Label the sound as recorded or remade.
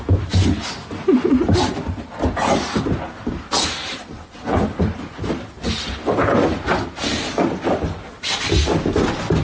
recorded